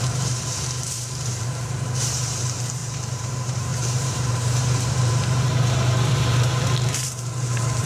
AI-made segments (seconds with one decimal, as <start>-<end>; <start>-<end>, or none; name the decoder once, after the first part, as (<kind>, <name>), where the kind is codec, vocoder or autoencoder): 0.0-7.9 (vocoder, BigVGAN v2)